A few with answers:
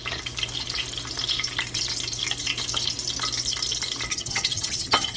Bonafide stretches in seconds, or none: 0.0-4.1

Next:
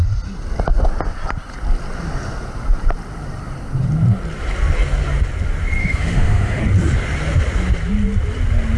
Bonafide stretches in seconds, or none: 0.0-5.8; 6.6-8.8

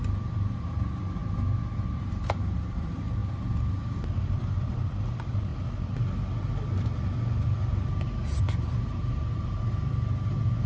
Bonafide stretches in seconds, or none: 1.2-2.0; 3.2-4.4; 5.5-8.4

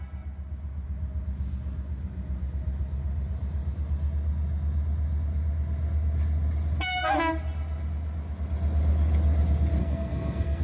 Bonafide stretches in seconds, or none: 0.0-9.8

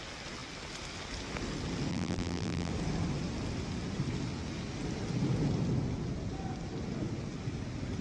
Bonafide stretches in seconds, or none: 0.0-1.9; 2.7-8.0